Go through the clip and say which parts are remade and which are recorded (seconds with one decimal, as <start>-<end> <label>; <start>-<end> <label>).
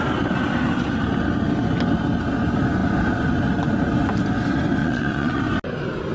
0.0-4.8 recorded; 4.8-5.4 remade; 5.4-6.1 recorded